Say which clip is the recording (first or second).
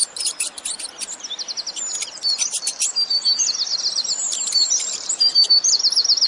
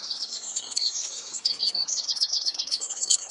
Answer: first